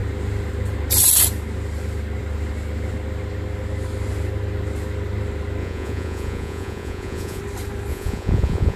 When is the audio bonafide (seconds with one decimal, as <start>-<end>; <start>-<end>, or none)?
0.0-5.6; 7.4-7.9